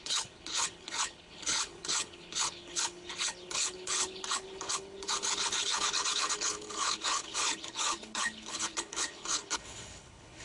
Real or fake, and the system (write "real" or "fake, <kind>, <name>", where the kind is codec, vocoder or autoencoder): fake, codec, HILCodec